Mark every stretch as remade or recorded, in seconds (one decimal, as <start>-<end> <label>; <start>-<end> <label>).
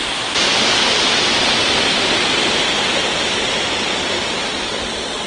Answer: 0.0-5.3 recorded